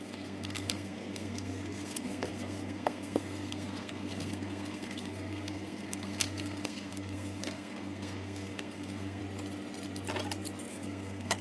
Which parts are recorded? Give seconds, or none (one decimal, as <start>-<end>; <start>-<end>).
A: 9.2-10.7